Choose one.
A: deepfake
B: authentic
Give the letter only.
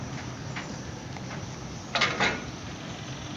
B